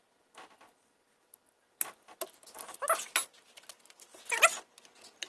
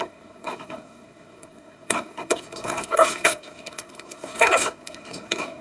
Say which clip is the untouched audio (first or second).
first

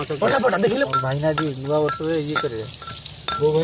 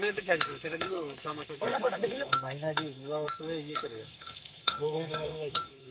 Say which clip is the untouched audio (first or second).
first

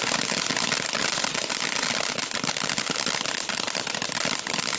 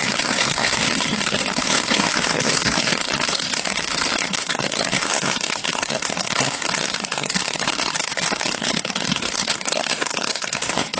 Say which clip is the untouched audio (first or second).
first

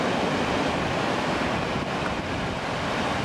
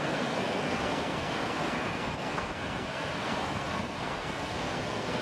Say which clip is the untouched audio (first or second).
first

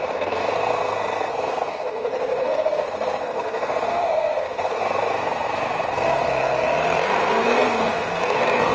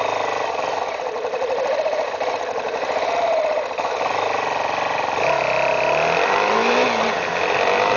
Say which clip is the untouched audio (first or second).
second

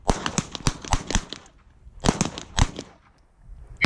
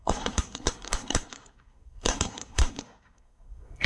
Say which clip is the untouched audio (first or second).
first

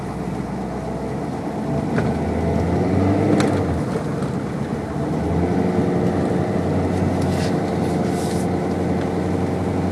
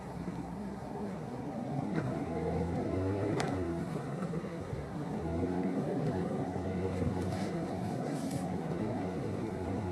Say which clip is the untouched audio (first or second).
first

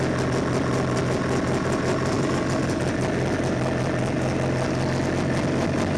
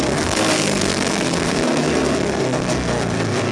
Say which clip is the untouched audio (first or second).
first